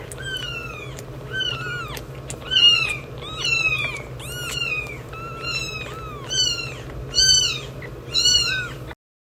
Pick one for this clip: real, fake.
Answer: real